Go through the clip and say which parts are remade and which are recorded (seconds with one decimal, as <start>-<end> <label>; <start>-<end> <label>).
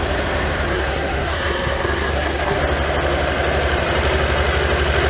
0.0-0.7 recorded; 0.7-2.6 remade; 2.6-5.1 recorded